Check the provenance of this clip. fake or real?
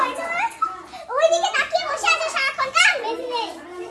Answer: real